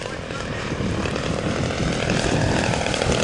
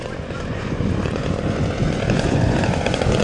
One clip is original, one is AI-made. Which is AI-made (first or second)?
second